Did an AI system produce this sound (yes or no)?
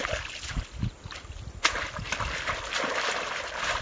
no